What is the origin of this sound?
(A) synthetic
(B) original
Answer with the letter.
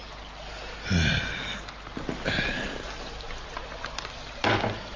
B